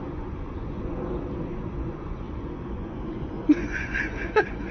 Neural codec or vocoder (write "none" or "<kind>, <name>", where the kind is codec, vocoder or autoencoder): vocoder, Vocos